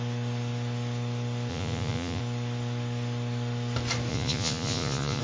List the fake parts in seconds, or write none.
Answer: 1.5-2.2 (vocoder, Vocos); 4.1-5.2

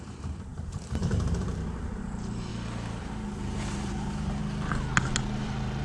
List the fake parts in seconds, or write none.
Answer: 0.0-2.5 (vocoder, BigVGAN v2); 3.0-4.4; 5.2-5.8

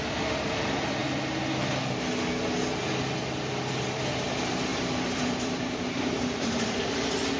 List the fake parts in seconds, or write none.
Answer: 4.7-6.7 (vocoder, BigVGAN v2)

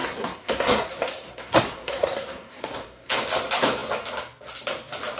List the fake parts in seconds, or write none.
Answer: 0.0-3.1 (codec, SNAC)

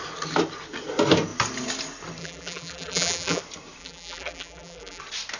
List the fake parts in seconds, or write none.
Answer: 2.2-3.4 (vocoder, BigVGAN v2); 3.8-5.0

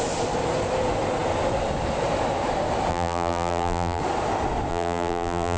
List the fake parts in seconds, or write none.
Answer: 2.9-4.0 (vocoder, BigVGAN v2); 4.7-5.6

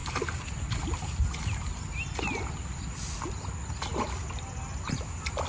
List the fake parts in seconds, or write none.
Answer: none